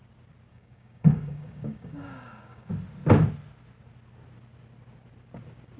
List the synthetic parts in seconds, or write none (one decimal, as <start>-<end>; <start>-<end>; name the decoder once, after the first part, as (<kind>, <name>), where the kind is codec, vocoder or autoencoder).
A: 0.5-2.7 (codec, DAC)